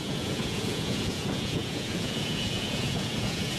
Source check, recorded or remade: remade